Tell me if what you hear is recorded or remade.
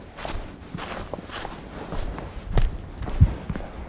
recorded